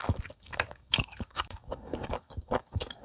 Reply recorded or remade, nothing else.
remade